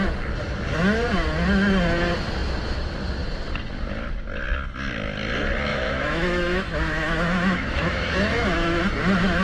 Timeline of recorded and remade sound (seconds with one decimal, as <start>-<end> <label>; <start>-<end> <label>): 0.0-5.7 recorded; 5.7-8.8 remade; 8.8-9.4 recorded